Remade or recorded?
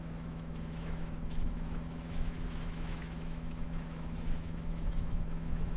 remade